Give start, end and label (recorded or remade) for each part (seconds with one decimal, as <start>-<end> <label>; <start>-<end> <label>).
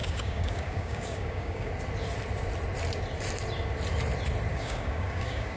0.0-1.7 remade; 1.7-4.5 recorded; 4.5-5.6 remade